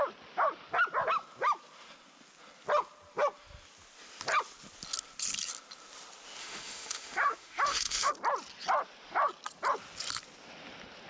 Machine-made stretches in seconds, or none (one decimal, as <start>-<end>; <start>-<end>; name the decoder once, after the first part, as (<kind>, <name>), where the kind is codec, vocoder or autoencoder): 6.4-8.1 (autoencoder, DAC-VAE)